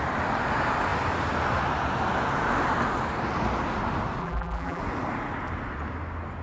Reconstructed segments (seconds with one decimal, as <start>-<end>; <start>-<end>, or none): 4.2-4.8